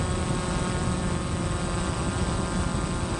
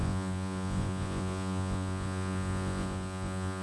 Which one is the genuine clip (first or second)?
first